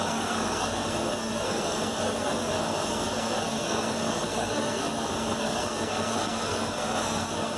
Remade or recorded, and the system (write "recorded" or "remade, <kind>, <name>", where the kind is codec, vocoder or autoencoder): remade, codec, SNAC